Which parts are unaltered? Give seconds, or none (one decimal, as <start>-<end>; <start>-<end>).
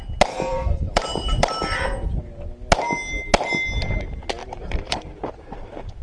0.0-0.5; 2.2-4.4